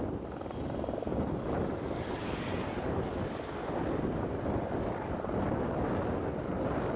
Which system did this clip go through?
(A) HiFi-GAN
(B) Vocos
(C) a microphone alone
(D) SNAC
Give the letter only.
C